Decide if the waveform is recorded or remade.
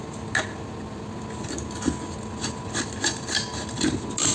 recorded